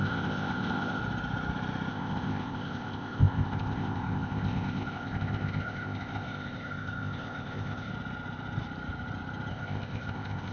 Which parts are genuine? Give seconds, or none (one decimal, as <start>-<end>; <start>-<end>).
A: 1.0-1.9; 7.9-9.5